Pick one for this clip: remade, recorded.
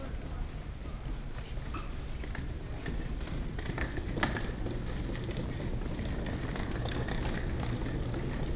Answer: recorded